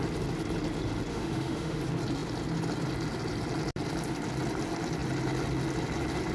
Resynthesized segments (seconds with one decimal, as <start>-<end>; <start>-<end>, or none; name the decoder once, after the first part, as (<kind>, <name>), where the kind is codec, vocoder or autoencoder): 1.1-1.8 (autoencoder, DAC-VAE)